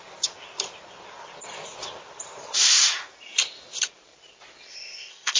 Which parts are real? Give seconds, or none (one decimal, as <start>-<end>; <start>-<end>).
0.0-4.7